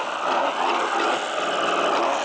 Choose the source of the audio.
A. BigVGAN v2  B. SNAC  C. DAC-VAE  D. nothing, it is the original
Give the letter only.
D